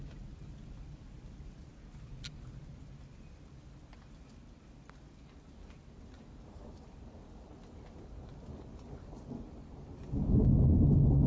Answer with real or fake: real